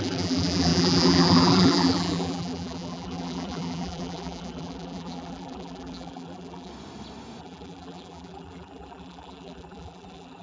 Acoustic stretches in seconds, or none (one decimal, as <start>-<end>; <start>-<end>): 6.7-7.4